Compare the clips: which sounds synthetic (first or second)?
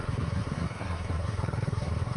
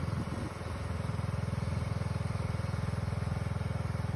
first